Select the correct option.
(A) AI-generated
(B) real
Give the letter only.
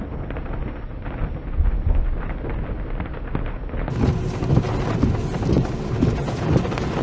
B